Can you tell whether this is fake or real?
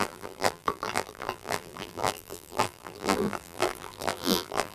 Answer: fake